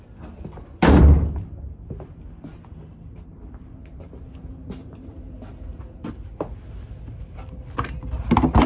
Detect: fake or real real